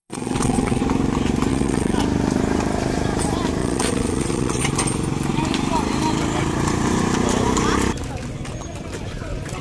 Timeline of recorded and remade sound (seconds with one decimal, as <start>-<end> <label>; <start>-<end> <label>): 0.0-0.8 remade; 0.8-1.5 recorded; 1.5-2.0 remade; 2.0-3.6 recorded; 3.6-4.6 remade; 4.6-9.6 recorded